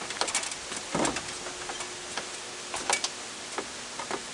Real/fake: real